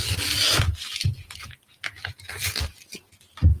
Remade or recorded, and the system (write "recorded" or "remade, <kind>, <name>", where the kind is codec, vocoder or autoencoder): recorded